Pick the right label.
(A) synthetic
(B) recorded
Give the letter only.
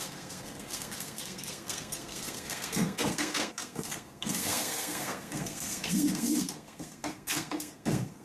A